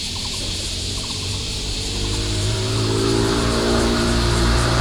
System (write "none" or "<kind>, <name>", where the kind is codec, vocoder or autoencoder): vocoder, BigVGAN v2